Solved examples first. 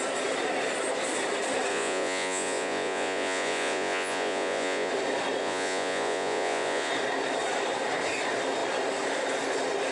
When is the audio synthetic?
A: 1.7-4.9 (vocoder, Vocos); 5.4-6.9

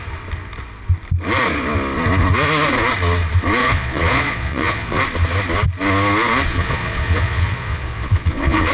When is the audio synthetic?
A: 3.6-5.0 (vocoder, Vocos); 6.5-8.7

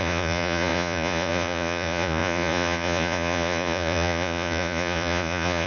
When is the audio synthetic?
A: 0.0-5.7 (vocoder, Vocos)